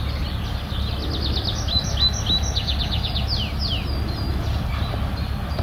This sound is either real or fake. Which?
real